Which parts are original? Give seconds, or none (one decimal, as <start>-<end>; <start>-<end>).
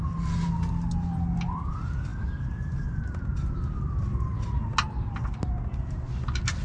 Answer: 0.0-6.6